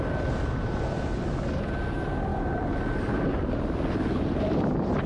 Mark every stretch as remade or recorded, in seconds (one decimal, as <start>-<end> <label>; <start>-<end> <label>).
0.0-5.1 recorded